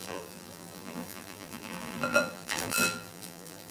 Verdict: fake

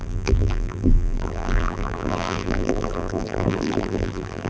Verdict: fake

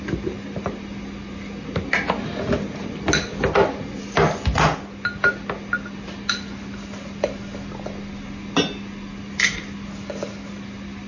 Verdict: real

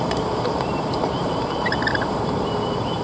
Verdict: fake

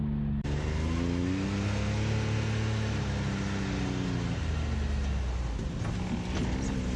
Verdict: real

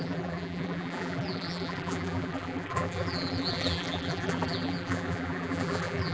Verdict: fake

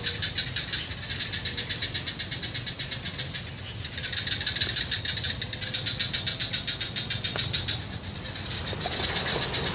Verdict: real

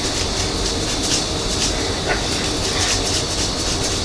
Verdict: real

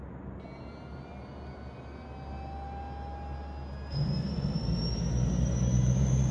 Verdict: real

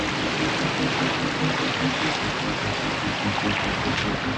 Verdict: real